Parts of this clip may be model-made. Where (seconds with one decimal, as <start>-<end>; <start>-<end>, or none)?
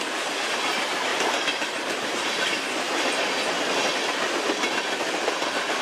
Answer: 1.1-3.9